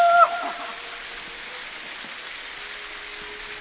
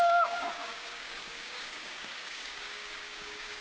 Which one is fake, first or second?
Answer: second